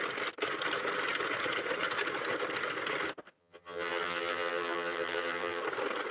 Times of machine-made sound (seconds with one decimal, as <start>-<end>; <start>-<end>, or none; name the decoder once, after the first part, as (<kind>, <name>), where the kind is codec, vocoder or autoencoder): 3.4-5.6 (vocoder, HiFi-GAN)